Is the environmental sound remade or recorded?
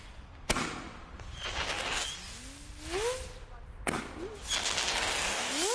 recorded